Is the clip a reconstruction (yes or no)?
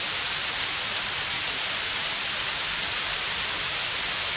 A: no